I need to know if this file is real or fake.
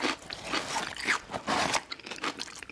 real